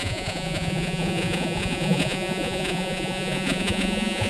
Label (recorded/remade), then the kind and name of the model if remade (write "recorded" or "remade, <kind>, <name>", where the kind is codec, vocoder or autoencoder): remade, vocoder, Vocos